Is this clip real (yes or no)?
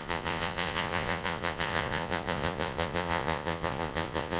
no